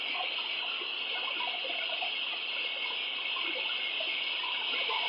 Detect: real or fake real